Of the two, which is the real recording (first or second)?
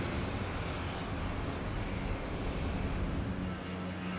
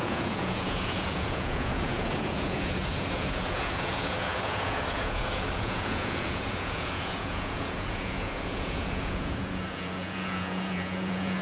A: first